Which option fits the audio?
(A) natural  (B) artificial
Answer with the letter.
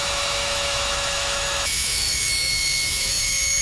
B